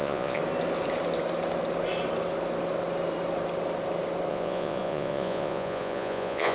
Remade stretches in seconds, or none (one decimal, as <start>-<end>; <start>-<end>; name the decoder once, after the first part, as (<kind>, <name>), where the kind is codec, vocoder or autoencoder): 0.0-0.4 (vocoder, Vocos); 4.3-6.5